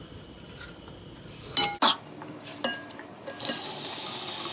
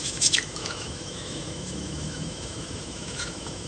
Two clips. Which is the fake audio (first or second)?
second